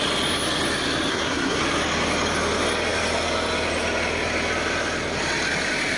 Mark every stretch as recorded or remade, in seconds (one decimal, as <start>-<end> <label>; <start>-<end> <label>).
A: 0.0-1.1 recorded; 1.1-1.6 remade; 1.6-6.0 recorded